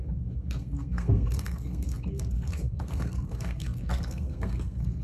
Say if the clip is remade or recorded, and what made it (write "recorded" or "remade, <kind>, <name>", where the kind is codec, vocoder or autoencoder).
remade, codec, SNAC